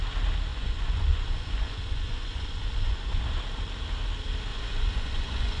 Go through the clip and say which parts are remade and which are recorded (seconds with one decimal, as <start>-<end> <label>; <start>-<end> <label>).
0.0-0.5 recorded; 0.5-3.2 remade; 3.2-4.5 recorded; 4.5-5.6 remade